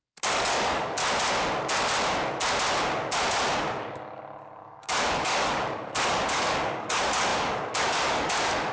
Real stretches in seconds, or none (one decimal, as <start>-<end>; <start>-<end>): 1.0-4.6